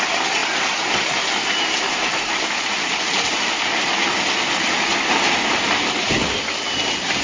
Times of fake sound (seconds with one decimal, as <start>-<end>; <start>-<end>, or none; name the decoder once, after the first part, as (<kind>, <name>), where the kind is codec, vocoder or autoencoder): 4.9-5.6 (vocoder, BigVGAN v2)